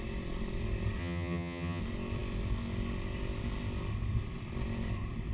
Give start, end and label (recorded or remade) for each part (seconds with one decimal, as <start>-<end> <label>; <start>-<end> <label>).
0.0-1.0 recorded; 1.0-1.8 remade; 1.8-5.3 recorded